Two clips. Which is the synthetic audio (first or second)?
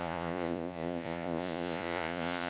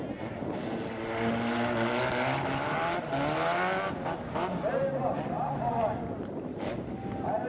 first